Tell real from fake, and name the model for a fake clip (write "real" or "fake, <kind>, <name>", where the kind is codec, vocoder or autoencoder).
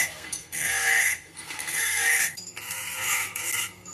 fake, codec, SNAC